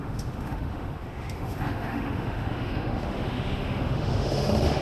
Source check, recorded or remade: remade